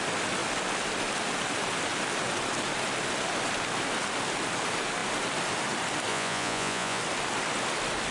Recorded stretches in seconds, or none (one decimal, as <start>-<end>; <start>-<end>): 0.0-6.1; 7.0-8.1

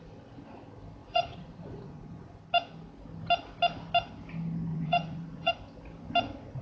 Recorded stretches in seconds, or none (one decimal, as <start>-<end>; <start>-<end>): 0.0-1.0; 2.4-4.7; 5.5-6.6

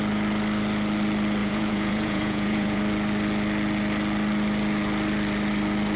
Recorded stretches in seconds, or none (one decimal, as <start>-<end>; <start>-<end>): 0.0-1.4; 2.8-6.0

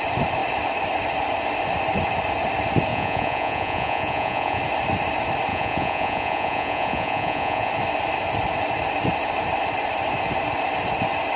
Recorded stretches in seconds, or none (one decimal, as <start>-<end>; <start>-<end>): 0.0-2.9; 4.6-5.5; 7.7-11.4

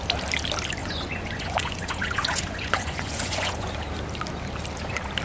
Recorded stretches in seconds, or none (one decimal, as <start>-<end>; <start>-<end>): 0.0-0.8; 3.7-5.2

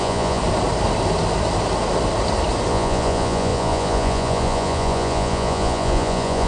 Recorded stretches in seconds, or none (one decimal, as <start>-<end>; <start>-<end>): 0.4-2.7

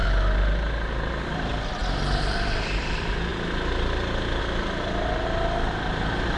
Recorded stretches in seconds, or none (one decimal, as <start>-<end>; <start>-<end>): 0.0-6.4